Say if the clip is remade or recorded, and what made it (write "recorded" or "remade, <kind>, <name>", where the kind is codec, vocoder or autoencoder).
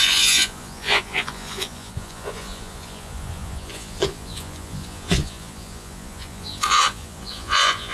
remade, vocoder, Vocos